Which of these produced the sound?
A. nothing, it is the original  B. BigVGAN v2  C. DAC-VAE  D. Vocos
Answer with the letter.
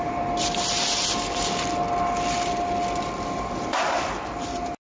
A